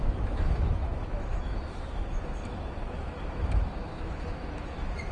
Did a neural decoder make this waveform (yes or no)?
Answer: yes